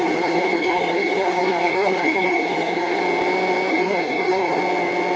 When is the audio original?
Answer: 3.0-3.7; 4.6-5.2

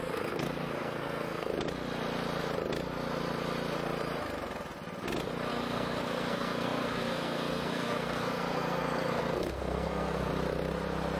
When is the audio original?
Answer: 1.5-5.5; 10.3-11.2

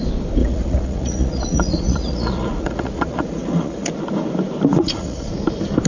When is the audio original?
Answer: 0.0-0.4; 3.9-4.7; 5.3-5.9

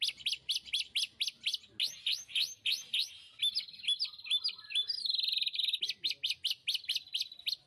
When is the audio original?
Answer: 0.0-7.7

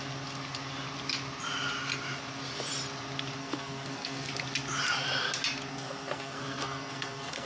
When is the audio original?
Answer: 0.0-3.4; 4.3-5.7

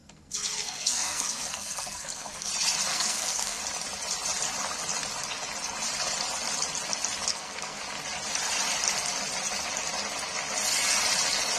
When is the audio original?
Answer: 2.5-2.9; 3.6-7.3; 7.8-11.6

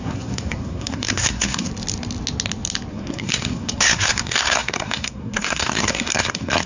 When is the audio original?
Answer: 1.7-2.9